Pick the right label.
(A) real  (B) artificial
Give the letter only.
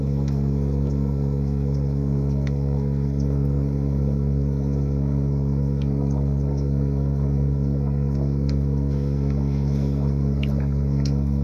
B